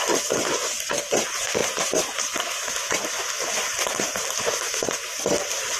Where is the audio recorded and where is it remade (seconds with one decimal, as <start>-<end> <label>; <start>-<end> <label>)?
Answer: 0.0-3.7 recorded; 3.7-4.9 remade; 4.9-5.8 recorded